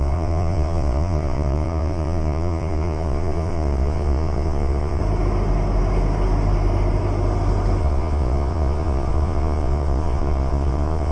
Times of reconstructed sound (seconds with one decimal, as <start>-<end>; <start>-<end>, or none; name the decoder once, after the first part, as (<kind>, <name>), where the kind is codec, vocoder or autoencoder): 0.0-5.0 (vocoder, Vocos); 7.8-11.1